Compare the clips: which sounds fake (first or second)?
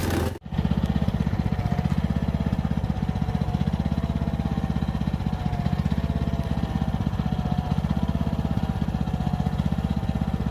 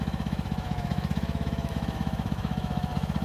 second